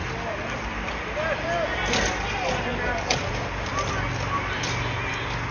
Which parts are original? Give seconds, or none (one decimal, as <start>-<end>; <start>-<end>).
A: 0.0-5.5